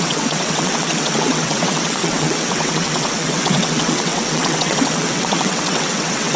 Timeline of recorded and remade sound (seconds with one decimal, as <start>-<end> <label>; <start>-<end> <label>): 0.0-6.4 remade